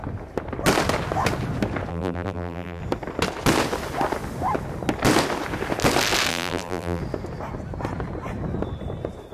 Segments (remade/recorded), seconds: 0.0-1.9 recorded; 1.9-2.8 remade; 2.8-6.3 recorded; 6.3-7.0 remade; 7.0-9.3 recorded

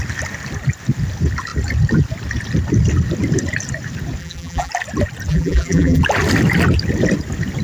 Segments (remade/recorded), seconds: 0.0-4.2 recorded; 4.2-4.7 remade; 4.7-5.3 recorded; 5.3-6.0 remade; 6.0-7.6 recorded

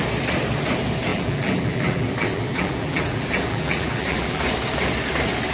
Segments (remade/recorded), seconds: 0.0-1.1 recorded; 1.1-4.4 remade; 4.4-5.5 recorded

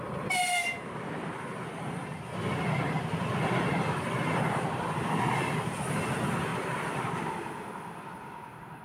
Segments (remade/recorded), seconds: 0.0-6.5 recorded; 6.5-7.0 remade; 7.0-8.8 recorded

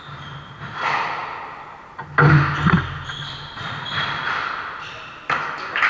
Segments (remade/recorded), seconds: 0.0-1.2 remade; 1.2-4.7 recorded; 4.7-5.9 remade

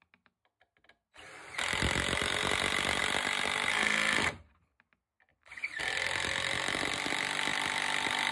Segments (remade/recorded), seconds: 0.0-5.3 recorded; 5.3-5.8 remade; 5.8-7.5 recorded; 7.5-8.3 remade